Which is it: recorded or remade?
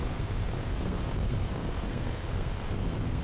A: remade